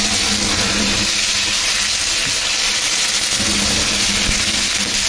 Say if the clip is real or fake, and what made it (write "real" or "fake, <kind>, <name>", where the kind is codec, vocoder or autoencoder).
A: real